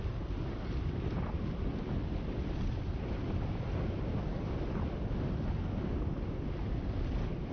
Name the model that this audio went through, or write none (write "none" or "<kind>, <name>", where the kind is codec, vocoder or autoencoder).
none